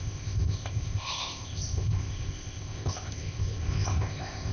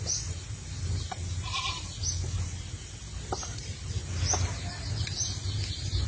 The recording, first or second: second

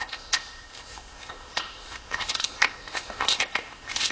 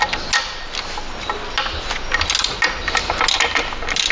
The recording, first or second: second